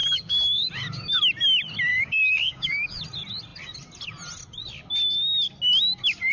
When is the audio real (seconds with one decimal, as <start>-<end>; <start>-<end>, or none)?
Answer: 0.7-1.9; 3.0-6.3